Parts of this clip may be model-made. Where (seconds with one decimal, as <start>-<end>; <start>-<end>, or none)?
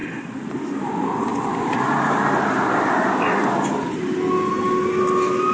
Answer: none